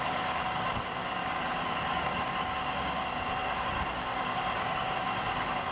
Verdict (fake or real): fake